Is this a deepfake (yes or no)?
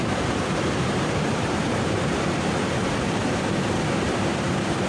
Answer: yes